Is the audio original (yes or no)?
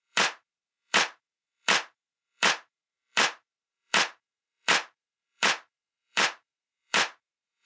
no